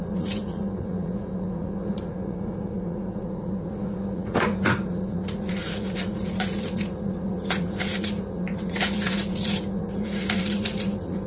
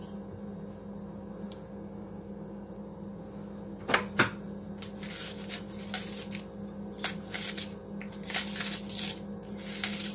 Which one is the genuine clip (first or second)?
second